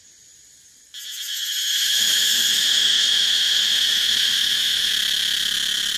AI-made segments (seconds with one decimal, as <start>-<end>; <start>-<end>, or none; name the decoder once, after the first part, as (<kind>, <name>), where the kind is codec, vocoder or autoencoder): 1.3-4.9 (autoencoder, DAC-VAE)